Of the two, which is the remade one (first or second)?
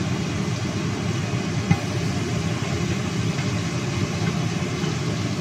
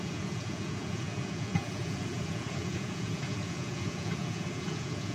second